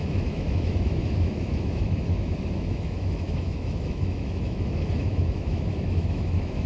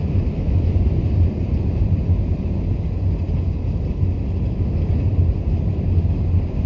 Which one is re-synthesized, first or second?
first